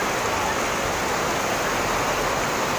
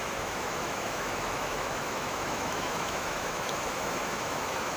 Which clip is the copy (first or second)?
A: second